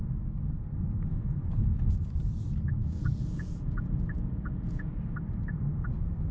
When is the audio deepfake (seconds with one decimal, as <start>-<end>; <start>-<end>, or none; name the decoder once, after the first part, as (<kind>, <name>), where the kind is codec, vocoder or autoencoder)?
1.2-1.9 (vocoder, Vocos); 2.8-4.9